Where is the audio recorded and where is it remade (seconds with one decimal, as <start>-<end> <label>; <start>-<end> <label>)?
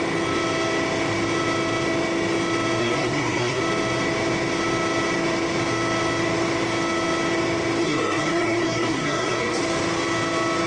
0.0-2.8 recorded; 2.8-3.6 remade; 3.6-7.8 recorded; 7.8-9.6 remade; 9.6-10.7 recorded